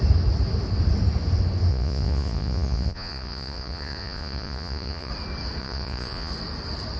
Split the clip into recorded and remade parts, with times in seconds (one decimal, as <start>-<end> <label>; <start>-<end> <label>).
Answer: 0.0-1.7 recorded; 1.7-5.1 remade; 5.1-5.6 recorded; 5.6-6.3 remade; 6.3-7.0 recorded